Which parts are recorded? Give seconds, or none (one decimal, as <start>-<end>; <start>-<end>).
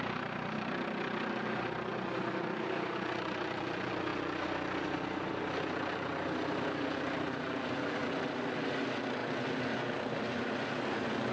0.0-11.3